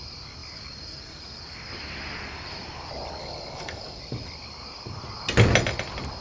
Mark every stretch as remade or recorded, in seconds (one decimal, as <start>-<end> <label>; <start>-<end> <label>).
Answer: 0.0-3.2 recorded; 3.2-4.0 remade; 4.0-6.2 recorded